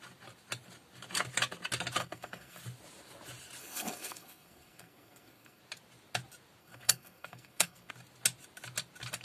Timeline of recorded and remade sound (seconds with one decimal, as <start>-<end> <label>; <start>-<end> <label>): 0.0-2.0 recorded; 2.0-2.6 remade; 2.6-3.6 recorded; 3.6-5.6 remade; 5.6-6.6 recorded; 6.6-7.9 remade; 7.9-9.2 recorded